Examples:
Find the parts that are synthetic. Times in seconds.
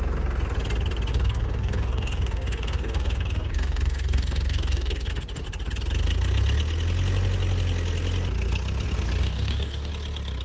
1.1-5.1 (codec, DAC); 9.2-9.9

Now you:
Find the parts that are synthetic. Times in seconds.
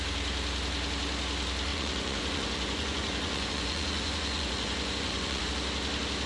1.7-5.5 (vocoder, Vocos)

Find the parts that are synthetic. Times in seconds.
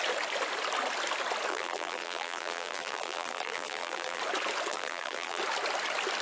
1.5-4.2 (vocoder, BigVGAN v2); 4.7-5.4